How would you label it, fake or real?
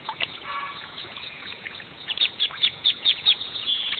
fake